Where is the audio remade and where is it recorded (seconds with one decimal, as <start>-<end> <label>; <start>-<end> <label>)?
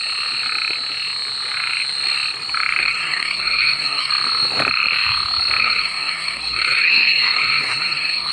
0.0-2.8 recorded; 2.8-4.1 remade; 4.1-5.6 recorded; 5.6-8.3 remade